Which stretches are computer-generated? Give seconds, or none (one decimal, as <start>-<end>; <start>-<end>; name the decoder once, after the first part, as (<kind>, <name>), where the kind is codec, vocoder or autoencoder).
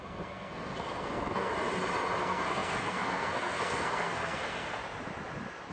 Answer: 0.0-1.5 (codec, SNAC); 2.2-4.8